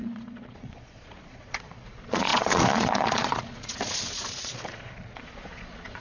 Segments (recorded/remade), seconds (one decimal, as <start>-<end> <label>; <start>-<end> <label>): 0.0-6.0 remade